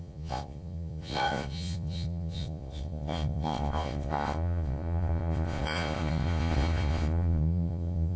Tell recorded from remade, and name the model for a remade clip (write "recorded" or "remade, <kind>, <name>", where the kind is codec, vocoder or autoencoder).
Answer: remade, vocoder, Vocos